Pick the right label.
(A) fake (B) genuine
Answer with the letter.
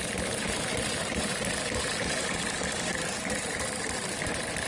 A